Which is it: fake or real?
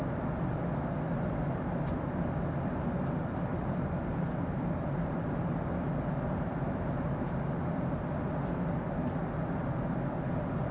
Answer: fake